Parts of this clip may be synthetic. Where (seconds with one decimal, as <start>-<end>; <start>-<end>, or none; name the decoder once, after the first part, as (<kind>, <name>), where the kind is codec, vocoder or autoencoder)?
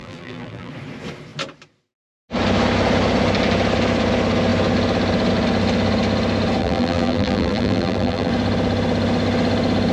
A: 0.0-0.7 (vocoder, BigVGAN v2); 6.6-8.3